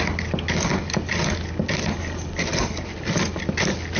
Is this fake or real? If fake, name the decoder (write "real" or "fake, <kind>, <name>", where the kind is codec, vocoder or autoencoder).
real